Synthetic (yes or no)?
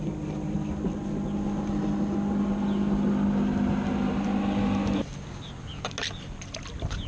no